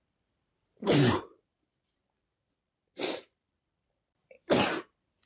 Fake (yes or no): yes